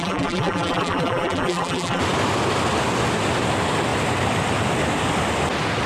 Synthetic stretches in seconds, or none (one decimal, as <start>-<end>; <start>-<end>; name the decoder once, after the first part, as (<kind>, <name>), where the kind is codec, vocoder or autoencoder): 0.0-2.0 (vocoder, BigVGAN v2)